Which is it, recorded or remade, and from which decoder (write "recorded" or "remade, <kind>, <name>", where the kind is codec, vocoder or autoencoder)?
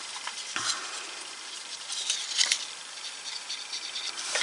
recorded